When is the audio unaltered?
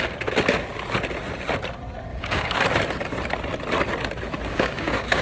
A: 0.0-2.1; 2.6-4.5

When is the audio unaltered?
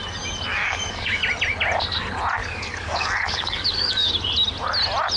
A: 0.0-0.5; 1.2-2.4; 4.1-5.2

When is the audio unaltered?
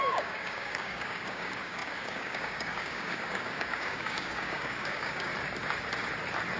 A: 5.3-6.6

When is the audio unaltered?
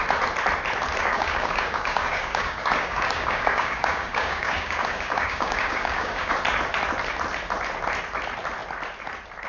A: 0.0-1.0; 6.3-9.5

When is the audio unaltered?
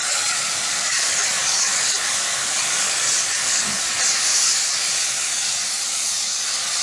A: 3.9-4.3